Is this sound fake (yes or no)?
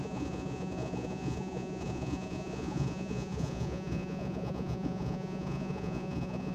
yes